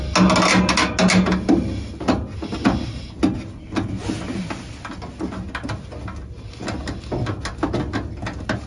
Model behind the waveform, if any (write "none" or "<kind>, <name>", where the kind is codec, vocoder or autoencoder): none